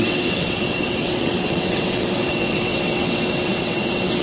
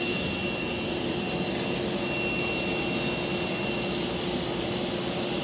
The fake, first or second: first